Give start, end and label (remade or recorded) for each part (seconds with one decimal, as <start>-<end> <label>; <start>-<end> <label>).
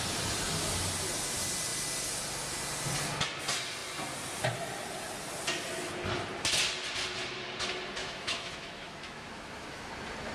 0.0-8.0 recorded; 8.0-9.9 remade; 9.9-10.3 recorded